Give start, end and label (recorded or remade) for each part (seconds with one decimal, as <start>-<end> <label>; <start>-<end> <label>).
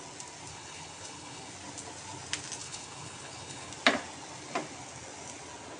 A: 0.0-0.5 recorded; 0.5-1.5 remade; 1.5-2.6 recorded; 2.6-3.7 remade; 3.7-5.8 recorded